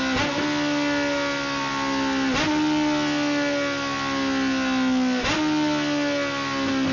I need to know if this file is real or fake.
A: real